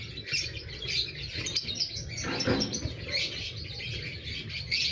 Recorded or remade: remade